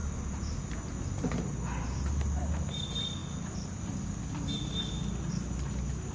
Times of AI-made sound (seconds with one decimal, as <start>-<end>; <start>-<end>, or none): none